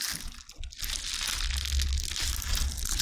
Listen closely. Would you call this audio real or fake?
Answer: real